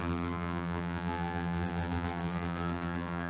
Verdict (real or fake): fake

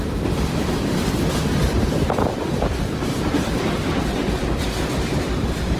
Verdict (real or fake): fake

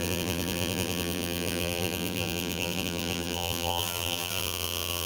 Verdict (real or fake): fake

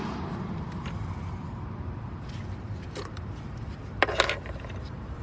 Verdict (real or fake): fake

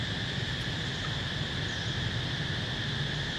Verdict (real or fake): real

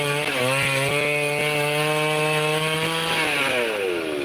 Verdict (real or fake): real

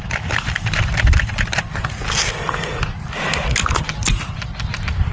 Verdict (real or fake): real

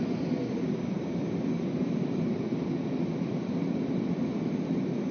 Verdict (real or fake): fake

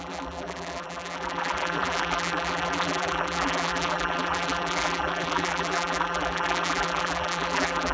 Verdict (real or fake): fake